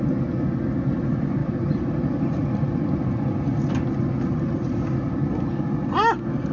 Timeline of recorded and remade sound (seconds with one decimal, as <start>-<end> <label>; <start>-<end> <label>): 0.0-1.4 recorded; 1.4-5.0 remade; 5.0-6.5 recorded